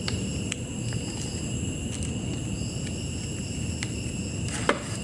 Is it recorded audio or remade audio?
recorded